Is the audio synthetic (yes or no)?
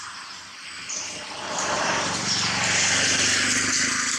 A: no